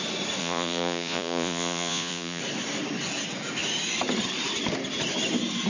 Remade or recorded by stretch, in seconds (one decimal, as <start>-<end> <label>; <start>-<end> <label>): 0.0-0.4 recorded; 0.4-2.4 remade; 2.4-5.7 recorded